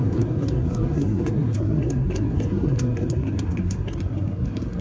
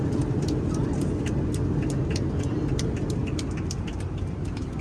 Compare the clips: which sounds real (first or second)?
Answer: second